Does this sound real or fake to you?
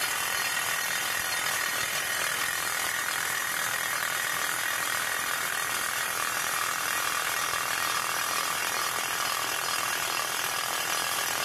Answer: fake